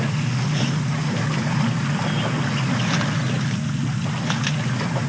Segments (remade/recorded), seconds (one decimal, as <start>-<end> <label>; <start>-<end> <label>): 0.0-5.1 recorded